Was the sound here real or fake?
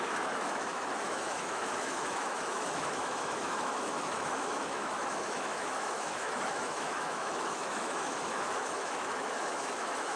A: fake